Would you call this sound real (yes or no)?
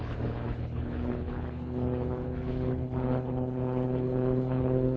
no